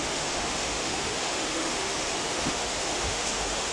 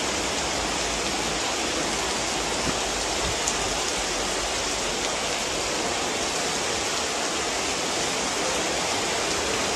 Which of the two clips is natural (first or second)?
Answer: second